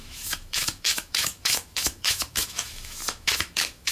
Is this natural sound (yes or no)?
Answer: no